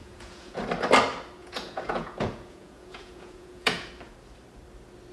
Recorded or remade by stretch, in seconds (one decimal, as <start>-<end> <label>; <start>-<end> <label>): 0.0-0.6 remade; 0.6-1.4 recorded; 1.4-3.9 remade; 3.9-5.1 recorded